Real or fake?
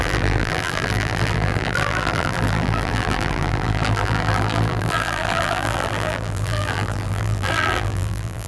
fake